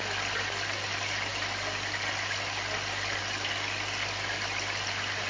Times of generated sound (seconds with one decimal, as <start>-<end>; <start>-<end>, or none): none